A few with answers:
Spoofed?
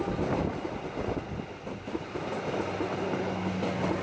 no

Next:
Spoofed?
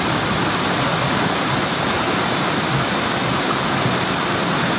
no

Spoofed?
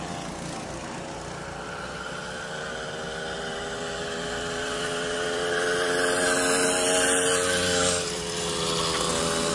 no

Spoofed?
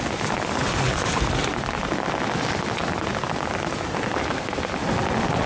no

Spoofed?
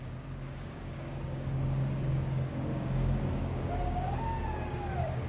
yes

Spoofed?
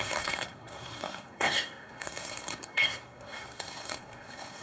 yes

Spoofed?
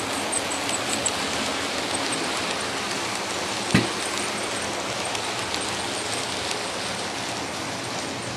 no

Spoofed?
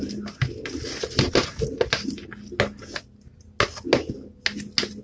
no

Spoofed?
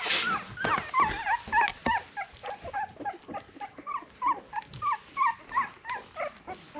no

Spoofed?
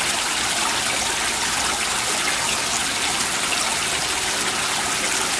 no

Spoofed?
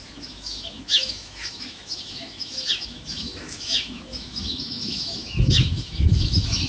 yes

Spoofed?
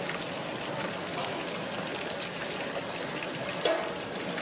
no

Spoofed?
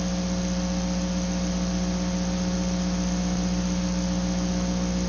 no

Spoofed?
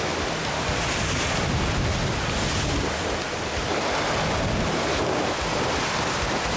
no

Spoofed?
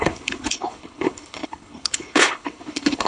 yes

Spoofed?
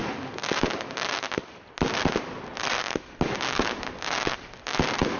no